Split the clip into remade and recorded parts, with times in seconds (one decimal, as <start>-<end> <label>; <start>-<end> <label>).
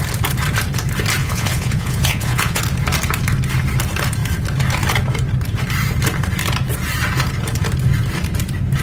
0.0-1.2 recorded; 1.2-2.6 remade; 2.6-8.8 recorded